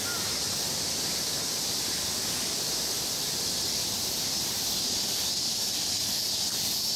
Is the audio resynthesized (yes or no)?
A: yes